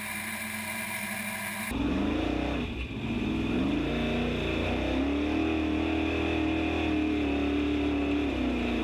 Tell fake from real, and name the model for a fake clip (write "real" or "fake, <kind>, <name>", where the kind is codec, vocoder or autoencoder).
real